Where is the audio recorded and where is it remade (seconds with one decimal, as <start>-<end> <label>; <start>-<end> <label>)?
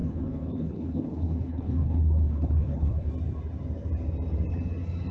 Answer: 0.0-3.1 remade; 3.1-5.1 recorded